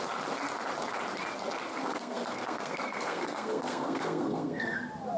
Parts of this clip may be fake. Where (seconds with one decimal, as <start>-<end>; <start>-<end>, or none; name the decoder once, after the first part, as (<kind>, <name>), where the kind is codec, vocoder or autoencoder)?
1.7-4.8 (codec, SNAC)